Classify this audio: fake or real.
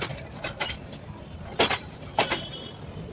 real